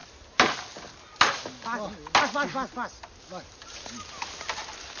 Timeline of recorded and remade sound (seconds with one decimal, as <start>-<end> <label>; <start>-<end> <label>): 0.0-5.0 recorded